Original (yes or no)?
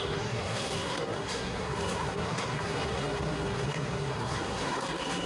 no